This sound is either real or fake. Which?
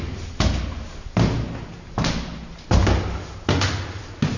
real